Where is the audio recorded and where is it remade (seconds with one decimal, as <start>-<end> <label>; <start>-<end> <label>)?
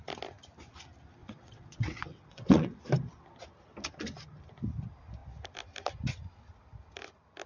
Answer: 0.0-1.2 recorded; 1.2-2.8 remade; 2.8-7.5 recorded